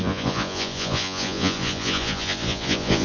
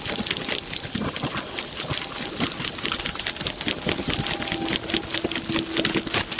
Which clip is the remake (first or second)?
first